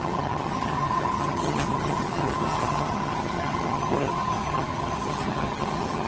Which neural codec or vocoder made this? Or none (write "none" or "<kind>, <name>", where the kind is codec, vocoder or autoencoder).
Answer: vocoder, HiFi-GAN